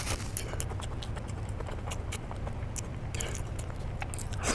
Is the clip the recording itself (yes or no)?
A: yes